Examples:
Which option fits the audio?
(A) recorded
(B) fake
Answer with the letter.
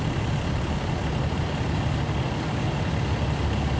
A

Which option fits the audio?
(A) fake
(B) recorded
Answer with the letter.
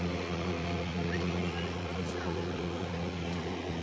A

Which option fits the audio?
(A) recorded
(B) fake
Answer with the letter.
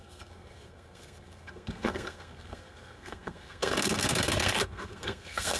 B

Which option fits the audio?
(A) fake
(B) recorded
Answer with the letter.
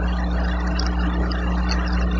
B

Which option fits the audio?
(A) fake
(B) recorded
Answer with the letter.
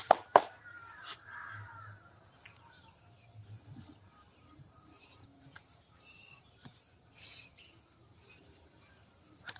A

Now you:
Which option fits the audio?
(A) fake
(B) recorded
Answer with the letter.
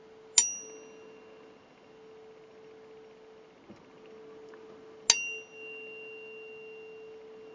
B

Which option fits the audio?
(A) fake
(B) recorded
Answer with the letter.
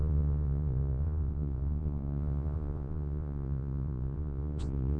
A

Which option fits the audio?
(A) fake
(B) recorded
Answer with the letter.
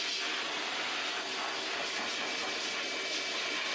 B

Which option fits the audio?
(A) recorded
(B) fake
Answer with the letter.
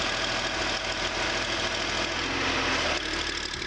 A